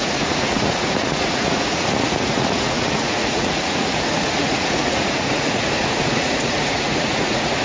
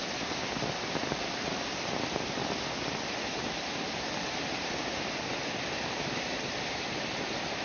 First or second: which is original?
second